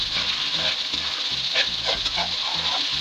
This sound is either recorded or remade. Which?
recorded